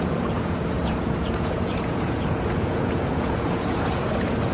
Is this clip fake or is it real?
fake